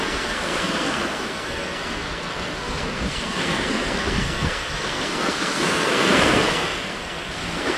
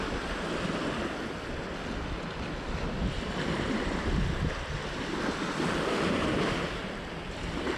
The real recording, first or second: second